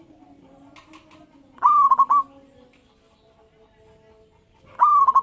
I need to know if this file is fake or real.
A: real